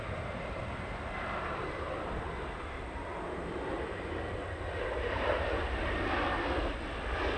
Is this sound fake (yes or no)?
no